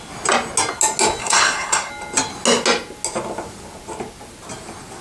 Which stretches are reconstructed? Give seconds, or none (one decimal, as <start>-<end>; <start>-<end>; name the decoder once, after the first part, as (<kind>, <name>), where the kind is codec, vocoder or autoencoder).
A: 1.2-1.9 (codec, SNAC)